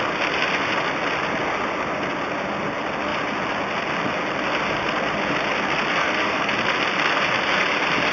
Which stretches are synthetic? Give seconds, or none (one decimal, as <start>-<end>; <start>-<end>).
5.9-6.5